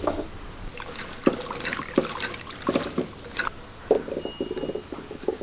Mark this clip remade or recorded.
recorded